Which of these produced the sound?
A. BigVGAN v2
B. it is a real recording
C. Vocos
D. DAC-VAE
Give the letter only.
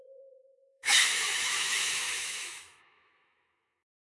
D